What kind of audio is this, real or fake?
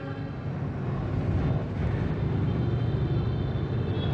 real